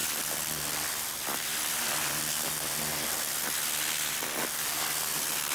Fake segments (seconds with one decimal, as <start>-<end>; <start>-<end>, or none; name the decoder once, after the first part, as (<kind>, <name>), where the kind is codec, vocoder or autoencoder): 0.0-3.3 (vocoder, BigVGAN v2)